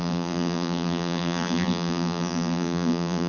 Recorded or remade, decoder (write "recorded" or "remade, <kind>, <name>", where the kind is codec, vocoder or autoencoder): remade, vocoder, BigVGAN v2